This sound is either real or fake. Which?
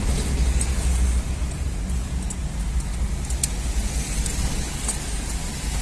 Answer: real